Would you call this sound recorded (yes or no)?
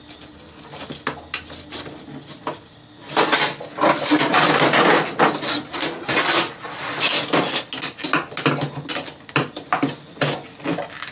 yes